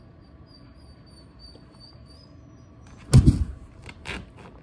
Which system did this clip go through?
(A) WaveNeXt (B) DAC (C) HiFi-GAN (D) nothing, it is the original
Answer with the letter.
D